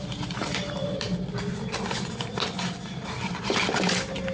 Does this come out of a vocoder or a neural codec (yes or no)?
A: yes